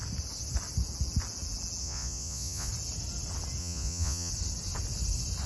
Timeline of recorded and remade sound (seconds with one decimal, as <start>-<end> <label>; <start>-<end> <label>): 0.0-1.8 recorded; 1.8-2.7 remade; 2.7-3.6 recorded; 3.6-4.3 remade; 4.3-5.5 recorded